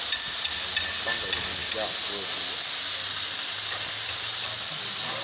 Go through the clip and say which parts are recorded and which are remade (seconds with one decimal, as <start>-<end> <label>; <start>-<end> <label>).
0.0-5.2 recorded